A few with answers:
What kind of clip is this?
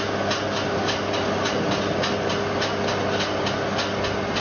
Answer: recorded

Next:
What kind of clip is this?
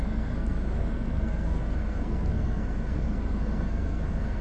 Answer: remade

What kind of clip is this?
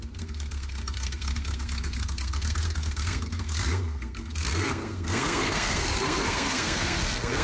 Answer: remade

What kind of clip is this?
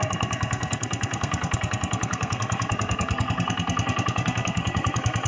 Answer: remade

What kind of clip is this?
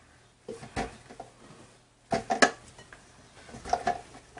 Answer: recorded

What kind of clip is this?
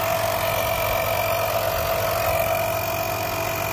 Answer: recorded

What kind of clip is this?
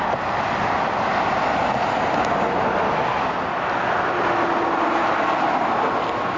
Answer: recorded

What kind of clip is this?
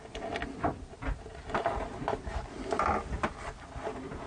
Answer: recorded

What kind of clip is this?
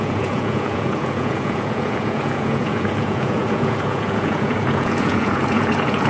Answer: remade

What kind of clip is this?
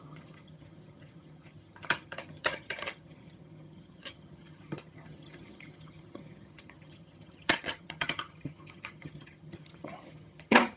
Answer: remade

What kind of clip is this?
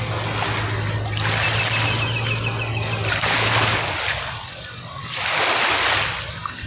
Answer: recorded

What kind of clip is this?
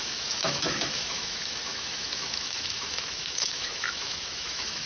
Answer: remade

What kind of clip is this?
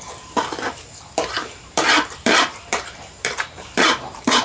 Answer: remade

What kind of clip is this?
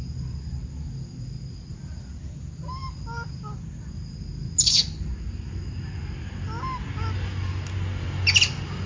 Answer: recorded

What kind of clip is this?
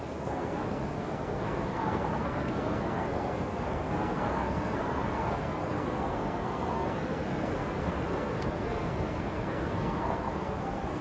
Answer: remade